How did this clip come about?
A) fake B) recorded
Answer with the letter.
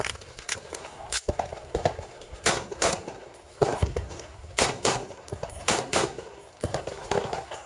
A